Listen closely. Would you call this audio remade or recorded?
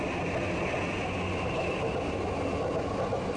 recorded